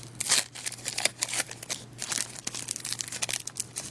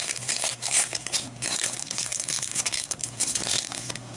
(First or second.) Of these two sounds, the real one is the first